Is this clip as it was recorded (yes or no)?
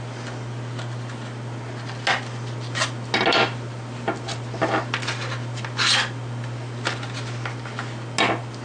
yes